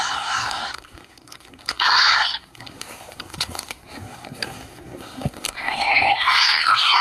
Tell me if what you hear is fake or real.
fake